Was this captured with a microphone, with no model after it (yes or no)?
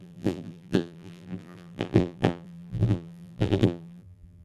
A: no